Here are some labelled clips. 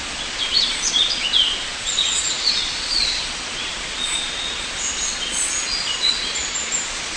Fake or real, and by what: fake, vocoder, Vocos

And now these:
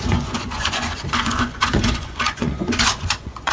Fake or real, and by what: fake, vocoder, Vocos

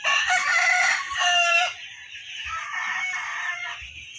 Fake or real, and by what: real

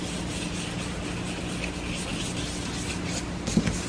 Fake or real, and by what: real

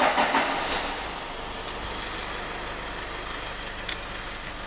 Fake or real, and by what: real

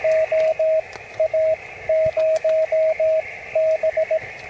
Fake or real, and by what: real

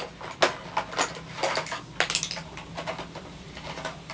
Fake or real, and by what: real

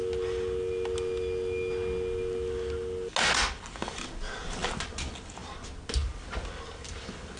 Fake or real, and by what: real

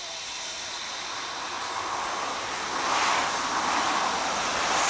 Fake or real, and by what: real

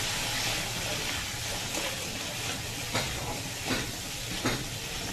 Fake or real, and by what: real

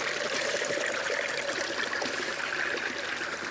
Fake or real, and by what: real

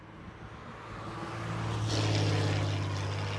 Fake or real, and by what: real